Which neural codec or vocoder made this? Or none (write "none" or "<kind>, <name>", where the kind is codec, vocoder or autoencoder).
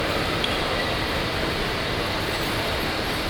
none